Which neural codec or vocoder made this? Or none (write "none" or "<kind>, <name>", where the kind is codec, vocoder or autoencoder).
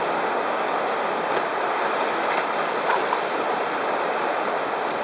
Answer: none